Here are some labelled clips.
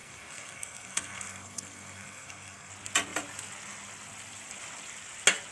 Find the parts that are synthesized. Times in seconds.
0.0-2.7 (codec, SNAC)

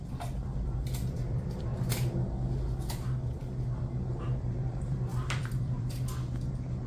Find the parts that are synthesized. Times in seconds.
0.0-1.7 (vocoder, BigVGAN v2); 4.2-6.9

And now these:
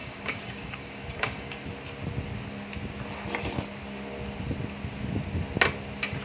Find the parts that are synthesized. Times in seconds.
0.0-1.6 (codec, DAC)